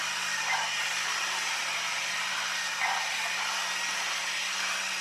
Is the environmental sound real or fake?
real